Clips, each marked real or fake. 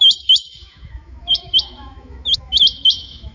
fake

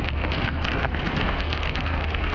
fake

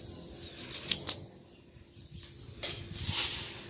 real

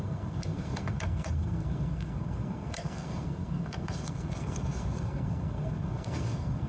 fake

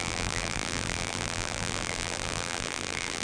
fake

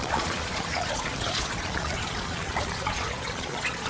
fake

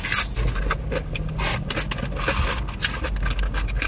real